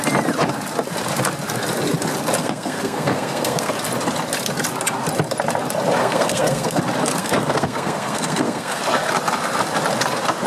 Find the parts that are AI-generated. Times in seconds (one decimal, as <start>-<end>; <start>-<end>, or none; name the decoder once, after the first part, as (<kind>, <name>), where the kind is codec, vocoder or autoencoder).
2.4-3.7 (codec, SNAC); 6.0-6.8; 7.2-8.8